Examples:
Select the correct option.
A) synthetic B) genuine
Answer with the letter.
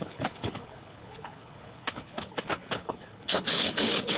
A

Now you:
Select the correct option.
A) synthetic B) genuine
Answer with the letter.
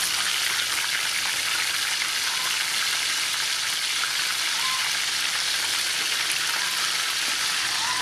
B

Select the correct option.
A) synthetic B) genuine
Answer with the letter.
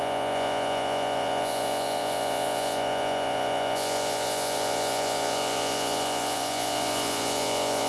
A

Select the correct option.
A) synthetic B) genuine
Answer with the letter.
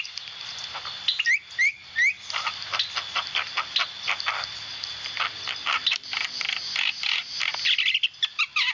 B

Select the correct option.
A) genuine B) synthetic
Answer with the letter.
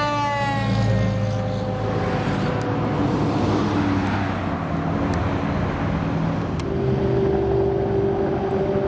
A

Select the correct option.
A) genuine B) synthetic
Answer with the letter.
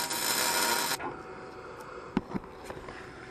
A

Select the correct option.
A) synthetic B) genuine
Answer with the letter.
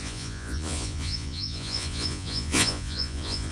A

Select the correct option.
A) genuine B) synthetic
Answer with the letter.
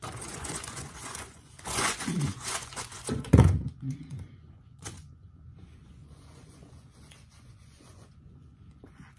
B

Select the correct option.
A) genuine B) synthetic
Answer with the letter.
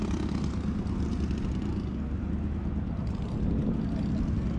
A